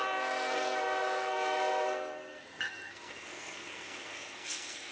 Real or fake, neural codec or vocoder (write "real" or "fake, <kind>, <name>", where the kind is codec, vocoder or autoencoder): fake, codec, SNAC